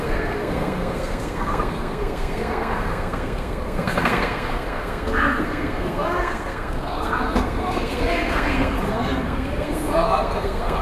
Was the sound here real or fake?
fake